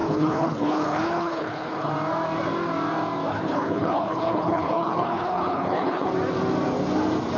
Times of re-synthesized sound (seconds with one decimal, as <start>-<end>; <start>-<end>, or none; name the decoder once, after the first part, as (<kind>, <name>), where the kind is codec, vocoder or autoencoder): 0.0-1.9 (codec, HILCodec); 3.3-6.1